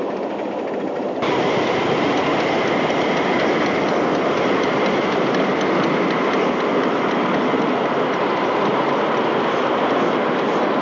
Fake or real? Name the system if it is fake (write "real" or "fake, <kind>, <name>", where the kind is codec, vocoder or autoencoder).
real